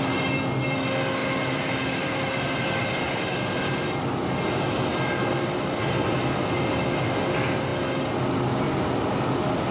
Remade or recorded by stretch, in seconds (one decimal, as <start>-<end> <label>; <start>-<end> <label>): 0.0-9.7 recorded